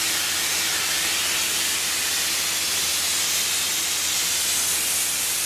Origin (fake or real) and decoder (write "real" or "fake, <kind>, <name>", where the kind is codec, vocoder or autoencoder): real